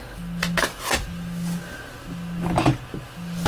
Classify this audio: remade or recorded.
recorded